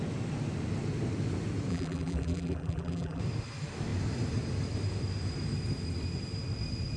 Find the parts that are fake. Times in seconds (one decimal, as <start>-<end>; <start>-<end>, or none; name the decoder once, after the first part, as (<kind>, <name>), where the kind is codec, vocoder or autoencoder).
1.7-3.2 (vocoder, BigVGAN v2)